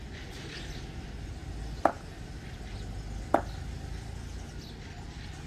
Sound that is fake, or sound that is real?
real